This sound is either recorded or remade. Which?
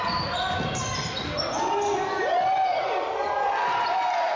recorded